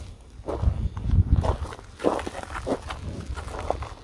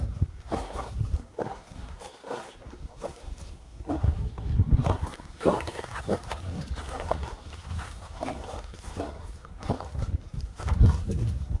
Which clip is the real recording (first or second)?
first